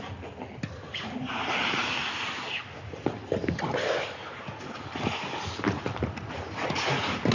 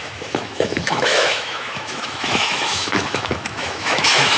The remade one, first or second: second